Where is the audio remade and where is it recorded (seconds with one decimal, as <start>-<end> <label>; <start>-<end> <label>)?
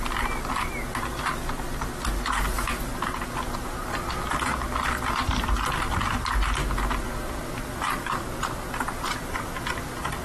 0.0-10.2 recorded